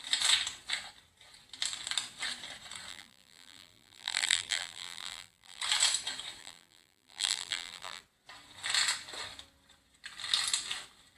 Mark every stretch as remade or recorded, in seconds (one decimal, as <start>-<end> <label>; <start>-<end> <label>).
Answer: 0.0-2.9 recorded; 2.9-5.6 remade; 5.6-6.4 recorded; 6.4-8.0 remade; 8.0-11.2 recorded